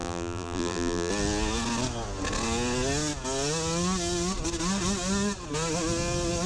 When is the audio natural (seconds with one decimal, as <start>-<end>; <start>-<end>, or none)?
1.1-6.5